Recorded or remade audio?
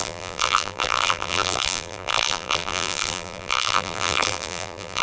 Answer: remade